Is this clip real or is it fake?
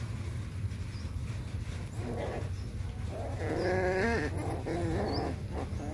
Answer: real